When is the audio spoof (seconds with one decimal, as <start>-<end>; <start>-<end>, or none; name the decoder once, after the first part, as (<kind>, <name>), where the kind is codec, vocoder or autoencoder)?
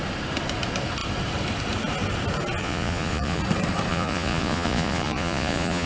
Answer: 2.6-3.4 (vocoder, Vocos); 3.9-5.9